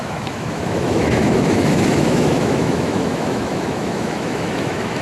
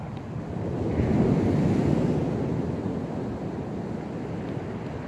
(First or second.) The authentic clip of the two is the second